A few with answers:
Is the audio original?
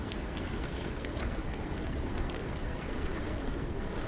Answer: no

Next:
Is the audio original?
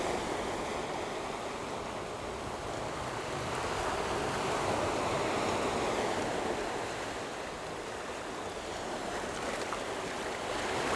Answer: yes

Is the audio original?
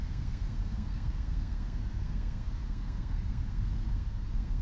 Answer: no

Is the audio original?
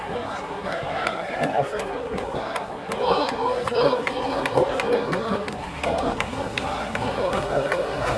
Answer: no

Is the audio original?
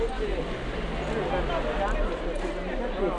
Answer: yes